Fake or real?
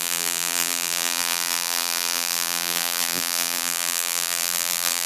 fake